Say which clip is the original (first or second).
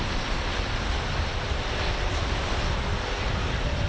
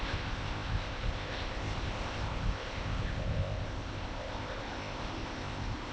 first